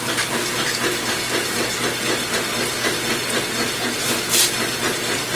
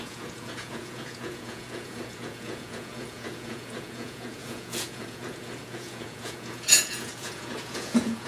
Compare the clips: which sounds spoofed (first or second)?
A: second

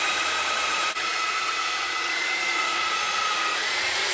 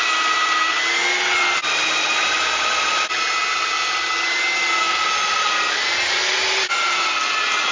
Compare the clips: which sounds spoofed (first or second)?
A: first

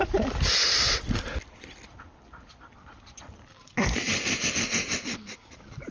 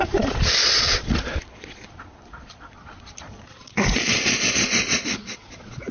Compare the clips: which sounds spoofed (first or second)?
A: second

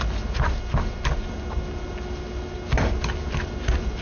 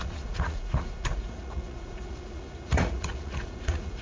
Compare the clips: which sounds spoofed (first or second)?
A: second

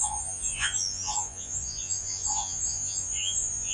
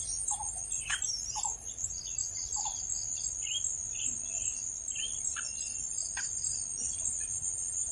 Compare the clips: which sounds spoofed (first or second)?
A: first